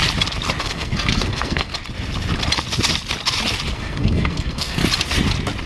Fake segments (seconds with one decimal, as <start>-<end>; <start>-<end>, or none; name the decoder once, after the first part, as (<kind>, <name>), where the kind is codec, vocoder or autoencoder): 0.6-1.7 (codec, SNAC); 3.7-4.8